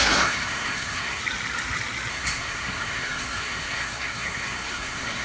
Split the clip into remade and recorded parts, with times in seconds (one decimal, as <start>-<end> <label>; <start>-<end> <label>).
0.0-1.2 remade; 1.2-2.1 recorded; 2.1-5.2 remade